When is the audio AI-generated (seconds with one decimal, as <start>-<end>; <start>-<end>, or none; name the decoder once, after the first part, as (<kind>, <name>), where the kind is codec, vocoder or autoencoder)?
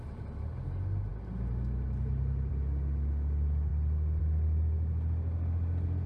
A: none